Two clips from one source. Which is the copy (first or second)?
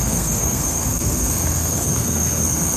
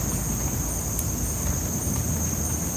first